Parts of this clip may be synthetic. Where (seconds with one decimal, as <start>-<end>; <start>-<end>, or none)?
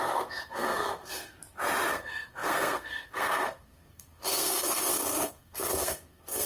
0.0-1.4; 1.9-6.5